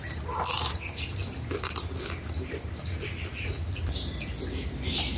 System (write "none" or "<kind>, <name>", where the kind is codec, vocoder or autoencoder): none